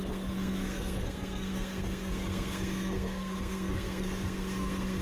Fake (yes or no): yes